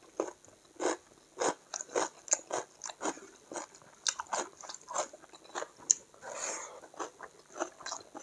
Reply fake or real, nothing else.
real